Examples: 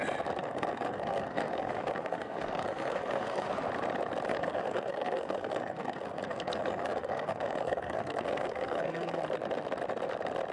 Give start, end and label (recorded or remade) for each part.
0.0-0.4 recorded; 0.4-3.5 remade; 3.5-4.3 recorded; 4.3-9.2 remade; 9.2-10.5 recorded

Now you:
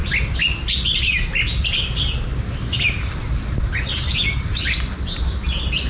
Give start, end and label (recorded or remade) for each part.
0.0-5.9 recorded

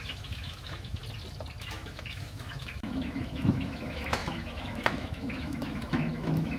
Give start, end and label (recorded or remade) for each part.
0.0-1.0 remade; 1.0-1.6 recorded; 1.6-6.6 remade

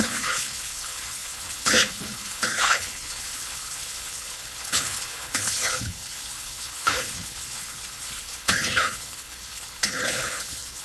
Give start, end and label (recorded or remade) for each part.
0.0-10.8 remade

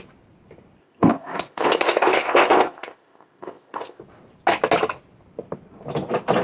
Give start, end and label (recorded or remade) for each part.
0.0-0.8 recorded; 0.8-4.0 remade; 4.0-6.4 recorded

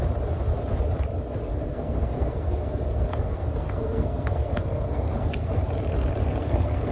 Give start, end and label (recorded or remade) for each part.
0.0-1.5 recorded; 1.5-5.6 remade; 5.6-6.2 recorded; 6.2-6.9 remade

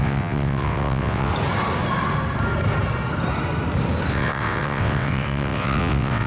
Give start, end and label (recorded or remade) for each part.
0.0-1.3 remade; 1.3-4.1 recorded; 4.1-6.3 remade

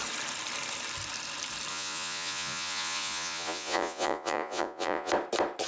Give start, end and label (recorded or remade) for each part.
0.0-1.7 recorded; 1.7-5.1 remade; 5.1-5.7 recorded